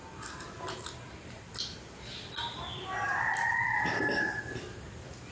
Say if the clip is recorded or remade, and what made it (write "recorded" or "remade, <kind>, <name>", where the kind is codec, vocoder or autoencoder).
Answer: recorded